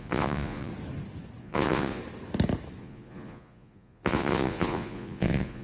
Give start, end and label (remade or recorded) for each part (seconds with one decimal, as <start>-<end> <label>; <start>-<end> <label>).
0.0-0.7 remade; 0.7-1.4 recorded; 1.4-2.0 remade; 2.0-2.8 recorded; 2.8-5.6 remade